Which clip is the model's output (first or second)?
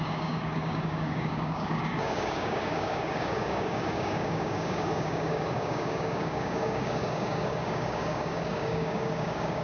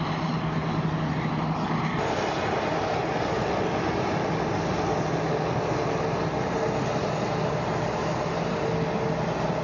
first